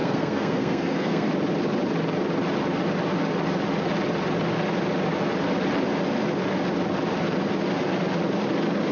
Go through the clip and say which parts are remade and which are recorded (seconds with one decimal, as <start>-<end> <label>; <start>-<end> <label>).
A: 0.0-1.3 remade; 1.3-8.9 recorded